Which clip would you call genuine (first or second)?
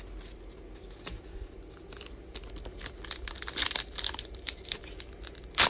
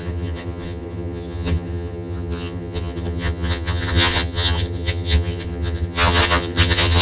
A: first